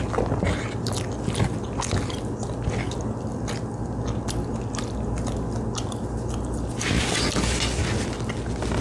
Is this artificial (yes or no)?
no